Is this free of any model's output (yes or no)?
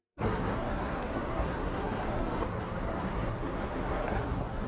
no